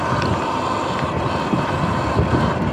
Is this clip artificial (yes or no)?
no